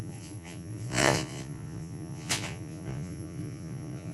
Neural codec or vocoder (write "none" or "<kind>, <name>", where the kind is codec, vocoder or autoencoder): vocoder, Vocos